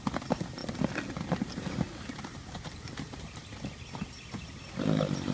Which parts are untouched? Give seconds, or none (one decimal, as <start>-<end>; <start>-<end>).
0.0-5.3